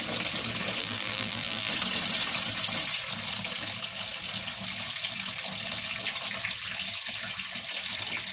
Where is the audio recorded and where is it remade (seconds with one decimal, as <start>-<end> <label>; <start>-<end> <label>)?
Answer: 0.0-0.8 recorded; 0.8-1.7 remade; 1.7-8.3 recorded